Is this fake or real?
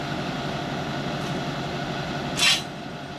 real